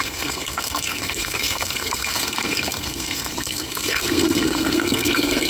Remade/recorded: remade